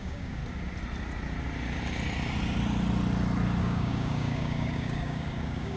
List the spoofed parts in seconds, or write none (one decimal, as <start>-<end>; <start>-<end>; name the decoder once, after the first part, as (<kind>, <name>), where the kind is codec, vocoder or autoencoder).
0.0-0.4 (codec, DAC); 3.6-5.8